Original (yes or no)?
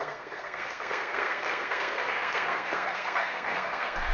no